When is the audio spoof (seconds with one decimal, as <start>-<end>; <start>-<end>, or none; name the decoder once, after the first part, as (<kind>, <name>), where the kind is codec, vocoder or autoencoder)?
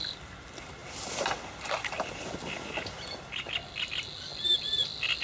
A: none